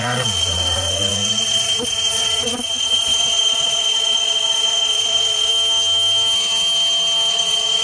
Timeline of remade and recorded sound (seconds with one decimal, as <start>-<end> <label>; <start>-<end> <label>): 0.0-5.5 remade; 5.5-7.3 recorded; 7.3-7.8 remade